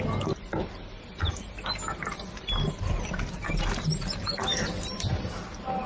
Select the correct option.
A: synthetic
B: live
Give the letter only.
B